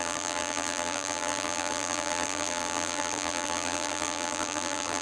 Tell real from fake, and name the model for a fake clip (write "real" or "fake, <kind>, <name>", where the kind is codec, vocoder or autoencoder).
fake, vocoder, BigVGAN v2